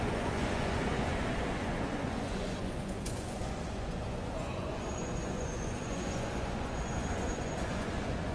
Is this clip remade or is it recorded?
remade